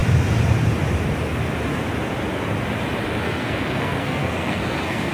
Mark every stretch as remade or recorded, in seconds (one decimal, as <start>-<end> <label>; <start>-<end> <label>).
0.0-3.1 recorded; 3.1-5.1 remade